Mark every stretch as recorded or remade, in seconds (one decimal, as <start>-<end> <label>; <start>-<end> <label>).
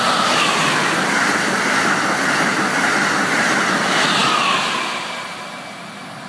0.0-6.3 recorded